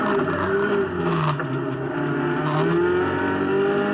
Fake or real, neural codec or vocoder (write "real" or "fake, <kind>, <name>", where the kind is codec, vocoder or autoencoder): real